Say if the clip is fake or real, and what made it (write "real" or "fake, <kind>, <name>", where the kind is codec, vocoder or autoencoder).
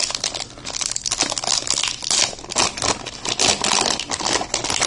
real